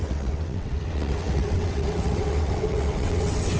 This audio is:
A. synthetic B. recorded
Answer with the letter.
A